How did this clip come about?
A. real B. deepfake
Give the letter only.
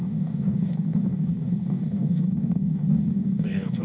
B